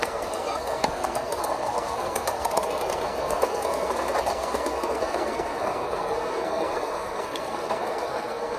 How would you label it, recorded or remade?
remade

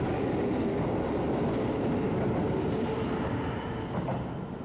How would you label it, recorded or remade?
recorded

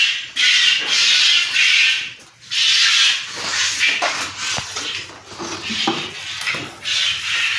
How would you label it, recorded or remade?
recorded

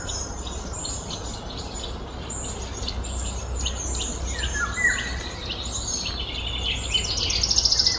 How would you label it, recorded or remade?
recorded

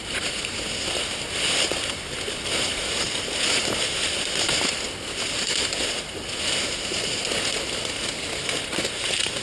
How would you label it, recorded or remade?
recorded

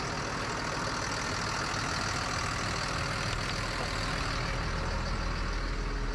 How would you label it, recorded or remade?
recorded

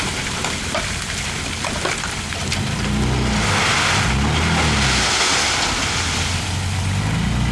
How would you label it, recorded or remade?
recorded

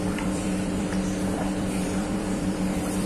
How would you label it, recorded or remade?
remade